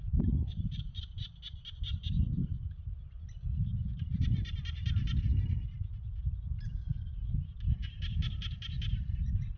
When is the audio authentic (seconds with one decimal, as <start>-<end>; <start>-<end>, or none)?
0.0-0.4; 1.0-9.6

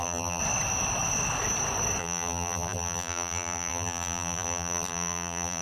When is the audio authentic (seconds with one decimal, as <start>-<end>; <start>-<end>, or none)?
0.4-2.0

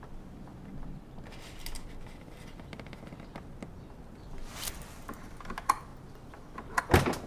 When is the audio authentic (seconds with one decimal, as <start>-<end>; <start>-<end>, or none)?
0.0-7.3

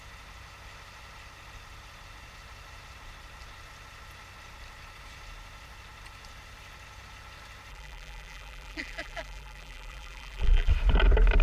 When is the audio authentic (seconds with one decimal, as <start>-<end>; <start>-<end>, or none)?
0.0-7.7; 10.7-11.4

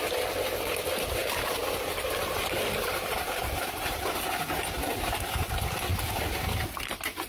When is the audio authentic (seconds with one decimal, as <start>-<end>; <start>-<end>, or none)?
0.0-1.2; 4.0-7.3

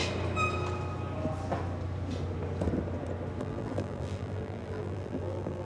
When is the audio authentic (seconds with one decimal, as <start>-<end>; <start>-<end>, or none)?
0.0-3.4

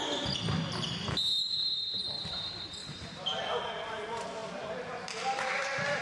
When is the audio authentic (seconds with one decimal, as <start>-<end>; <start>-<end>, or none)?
0.0-2.8; 3.5-6.0

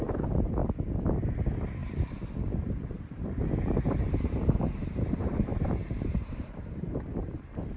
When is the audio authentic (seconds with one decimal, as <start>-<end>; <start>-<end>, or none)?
0.6-1.4; 1.8-4.0